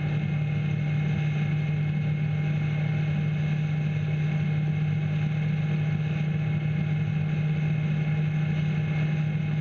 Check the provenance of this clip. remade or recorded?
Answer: recorded